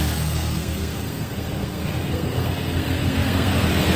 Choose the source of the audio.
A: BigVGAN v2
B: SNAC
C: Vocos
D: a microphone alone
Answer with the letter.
B